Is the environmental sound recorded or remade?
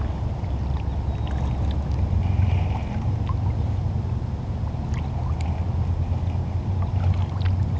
recorded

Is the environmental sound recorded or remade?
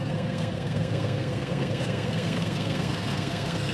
remade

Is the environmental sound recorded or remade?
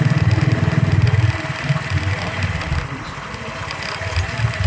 recorded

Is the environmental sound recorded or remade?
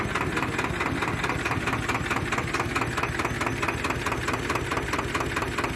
recorded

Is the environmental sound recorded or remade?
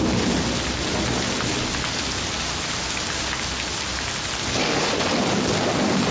recorded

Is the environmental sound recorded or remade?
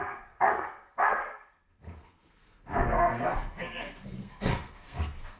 remade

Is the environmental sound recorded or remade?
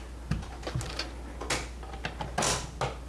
recorded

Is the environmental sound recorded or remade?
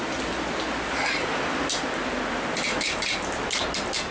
recorded